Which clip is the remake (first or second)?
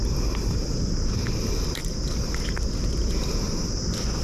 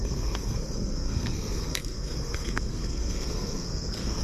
second